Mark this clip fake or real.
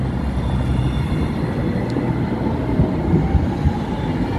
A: real